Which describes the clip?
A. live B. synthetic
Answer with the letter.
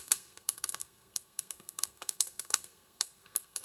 B